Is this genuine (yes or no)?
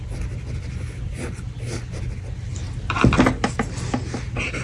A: yes